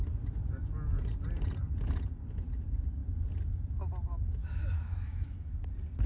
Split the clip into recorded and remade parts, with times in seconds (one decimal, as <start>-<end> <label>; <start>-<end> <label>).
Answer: 0.0-4.4 recorded; 4.4-5.5 remade; 5.5-6.1 recorded